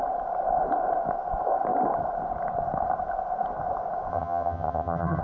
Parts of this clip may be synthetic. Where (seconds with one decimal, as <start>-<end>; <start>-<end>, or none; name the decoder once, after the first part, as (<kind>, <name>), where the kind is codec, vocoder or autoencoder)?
4.1-5.2 (vocoder, HiFi-GAN)